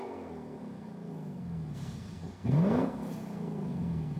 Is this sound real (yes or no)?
no